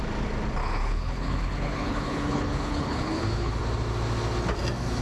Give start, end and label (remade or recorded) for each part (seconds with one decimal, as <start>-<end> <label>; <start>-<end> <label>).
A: 0.0-0.6 recorded; 0.6-3.6 remade; 3.6-5.0 recorded